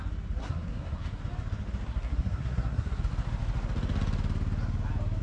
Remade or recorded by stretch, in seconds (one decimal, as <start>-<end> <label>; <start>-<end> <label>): 0.0-0.4 recorded; 0.4-1.2 remade; 1.2-1.9 recorded; 1.9-3.0 remade; 3.0-5.2 recorded